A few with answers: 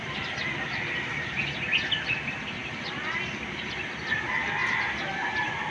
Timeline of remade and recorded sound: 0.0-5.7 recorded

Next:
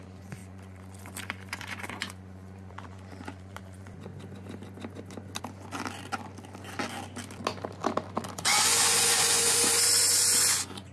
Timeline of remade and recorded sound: 0.0-4.1 remade; 4.1-8.3 recorded; 8.3-10.9 remade